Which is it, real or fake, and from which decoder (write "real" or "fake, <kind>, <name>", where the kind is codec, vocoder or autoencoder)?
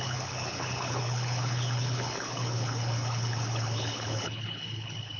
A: fake, codec, HILCodec